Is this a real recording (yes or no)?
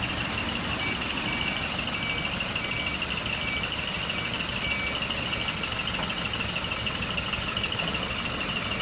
yes